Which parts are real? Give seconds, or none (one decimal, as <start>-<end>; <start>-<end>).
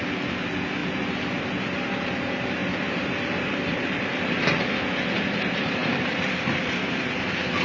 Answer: 0.0-2.6; 4.6-5.8; 6.9-7.6